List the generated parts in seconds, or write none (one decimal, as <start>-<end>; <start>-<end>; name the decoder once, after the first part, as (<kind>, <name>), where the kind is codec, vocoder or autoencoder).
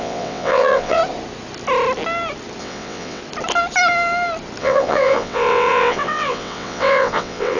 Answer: 0.0-1.0 (vocoder, WaveNeXt); 2.6-3.2; 4.6-7.6